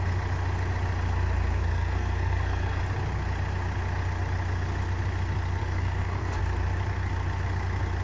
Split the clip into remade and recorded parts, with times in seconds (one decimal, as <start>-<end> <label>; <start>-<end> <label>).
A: 0.0-1.6 recorded; 1.6-2.8 remade; 2.8-5.6 recorded; 5.6-6.4 remade; 6.4-8.0 recorded